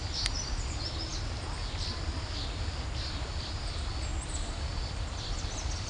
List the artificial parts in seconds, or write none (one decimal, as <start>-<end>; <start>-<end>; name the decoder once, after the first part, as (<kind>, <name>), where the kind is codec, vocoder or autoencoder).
none